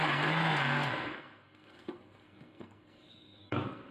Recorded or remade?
remade